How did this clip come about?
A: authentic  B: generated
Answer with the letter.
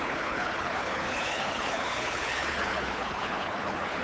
B